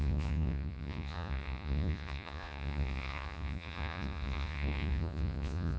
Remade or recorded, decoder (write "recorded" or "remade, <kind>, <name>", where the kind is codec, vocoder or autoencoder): remade, vocoder, Vocos